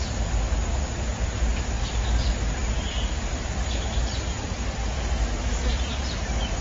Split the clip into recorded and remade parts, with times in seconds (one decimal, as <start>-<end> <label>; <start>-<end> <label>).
0.0-1.1 recorded; 1.1-1.9 remade; 1.9-2.6 recorded; 2.6-5.7 remade; 5.7-6.6 recorded